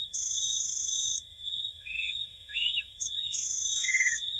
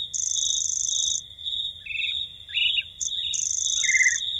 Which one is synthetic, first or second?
first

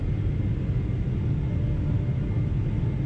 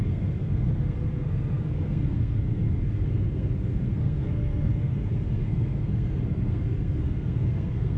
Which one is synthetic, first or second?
second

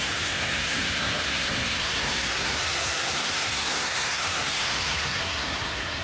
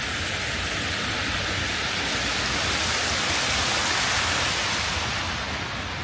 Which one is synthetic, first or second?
first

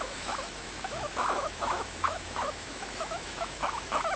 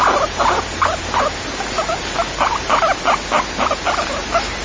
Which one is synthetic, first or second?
first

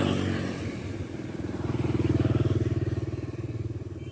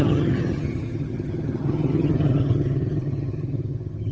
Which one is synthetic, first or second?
second